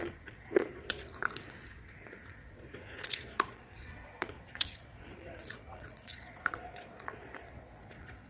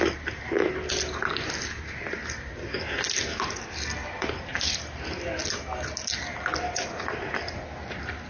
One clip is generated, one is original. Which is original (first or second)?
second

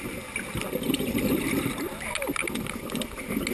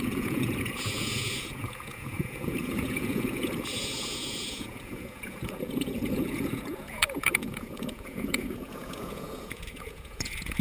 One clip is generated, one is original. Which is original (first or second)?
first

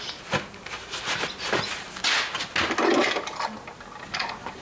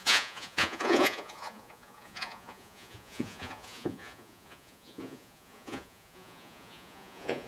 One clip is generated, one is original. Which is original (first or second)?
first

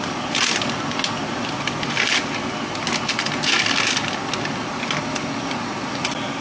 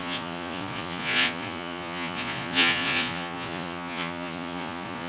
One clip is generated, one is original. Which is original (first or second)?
first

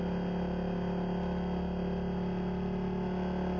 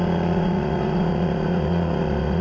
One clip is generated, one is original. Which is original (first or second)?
first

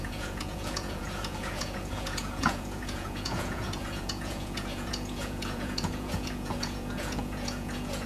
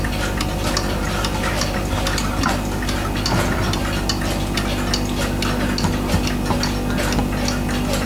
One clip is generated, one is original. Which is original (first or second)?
second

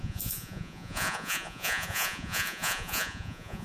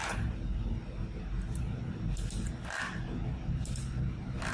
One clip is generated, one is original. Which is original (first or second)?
second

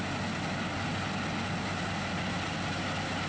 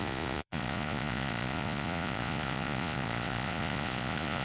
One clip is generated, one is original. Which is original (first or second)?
first